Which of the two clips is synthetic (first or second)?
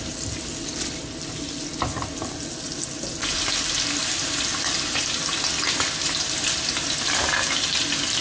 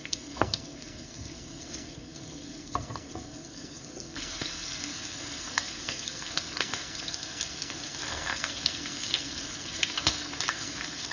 second